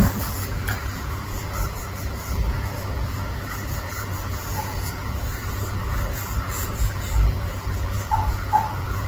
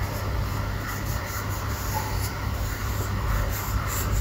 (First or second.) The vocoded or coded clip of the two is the first